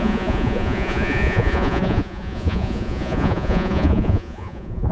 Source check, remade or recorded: remade